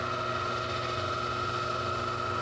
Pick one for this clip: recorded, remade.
recorded